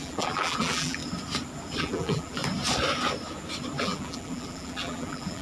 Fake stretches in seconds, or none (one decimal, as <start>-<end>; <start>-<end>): 0.0-1.0; 1.8-2.4; 3.8-5.4

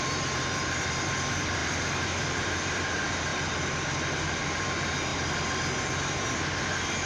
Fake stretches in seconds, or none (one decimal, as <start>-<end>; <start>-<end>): 0.0-3.3; 4.1-5.1; 5.8-7.1